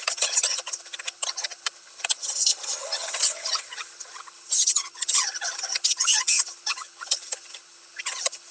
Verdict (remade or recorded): remade